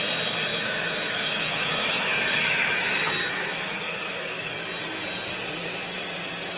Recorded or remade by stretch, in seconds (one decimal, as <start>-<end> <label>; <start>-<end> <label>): 0.0-0.5 recorded; 0.5-4.5 remade; 4.5-6.6 recorded